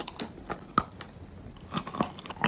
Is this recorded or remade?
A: recorded